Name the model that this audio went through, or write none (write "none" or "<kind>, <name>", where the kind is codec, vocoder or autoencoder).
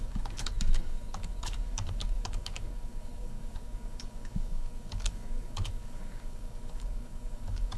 codec, DAC